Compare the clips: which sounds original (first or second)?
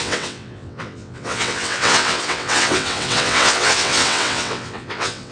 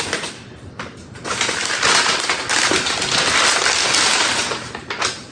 second